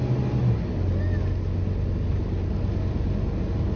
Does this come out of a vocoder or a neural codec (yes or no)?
no